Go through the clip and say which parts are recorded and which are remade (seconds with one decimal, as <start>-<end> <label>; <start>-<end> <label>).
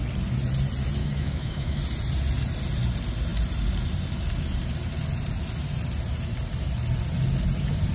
0.0-1.0 recorded; 1.0-1.8 remade; 1.8-7.9 recorded